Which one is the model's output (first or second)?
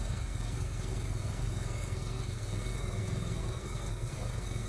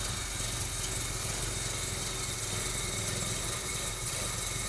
first